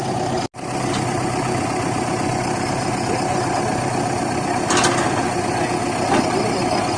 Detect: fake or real real